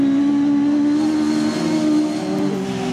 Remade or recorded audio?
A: recorded